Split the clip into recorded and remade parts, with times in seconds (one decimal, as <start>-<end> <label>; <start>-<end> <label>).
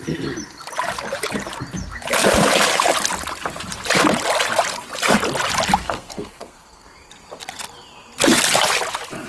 0.0-5.8 recorded; 5.8-7.1 remade; 7.1-9.3 recorded